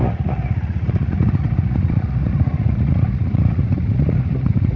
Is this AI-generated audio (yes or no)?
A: yes